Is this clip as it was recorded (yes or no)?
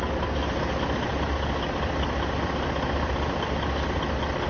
yes